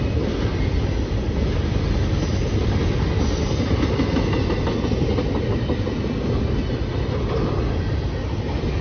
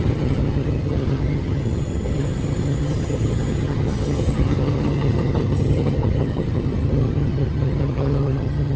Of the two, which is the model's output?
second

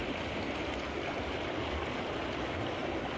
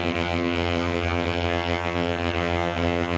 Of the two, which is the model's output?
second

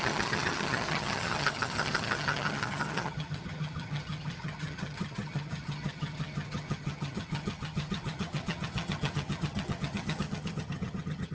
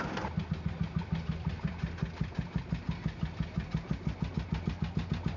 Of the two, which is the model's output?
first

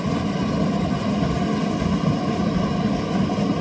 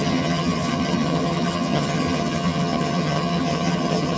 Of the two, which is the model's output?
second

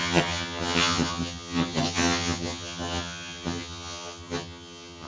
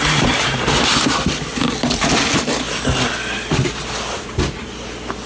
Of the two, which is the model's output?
first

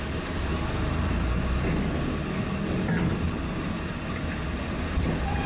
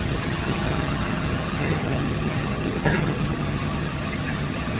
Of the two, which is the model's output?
second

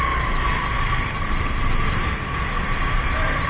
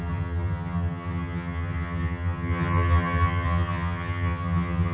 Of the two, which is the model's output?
second